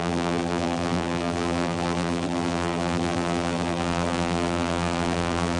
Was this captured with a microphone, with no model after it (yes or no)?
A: no